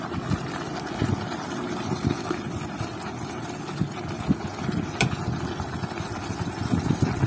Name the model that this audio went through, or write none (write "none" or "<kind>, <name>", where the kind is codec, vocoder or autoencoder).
vocoder, BigVGAN v2